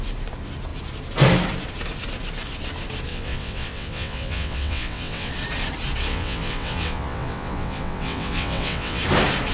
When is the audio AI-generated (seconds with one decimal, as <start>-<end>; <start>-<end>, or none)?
3.1-5.3; 6.1-9.0